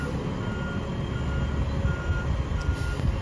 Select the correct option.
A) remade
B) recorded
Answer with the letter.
B